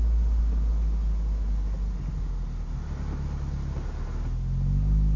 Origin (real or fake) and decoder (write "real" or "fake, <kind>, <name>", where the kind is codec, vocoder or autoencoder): real